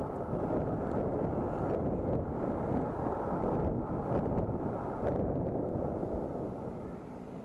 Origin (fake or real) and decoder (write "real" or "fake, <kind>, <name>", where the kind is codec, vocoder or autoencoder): real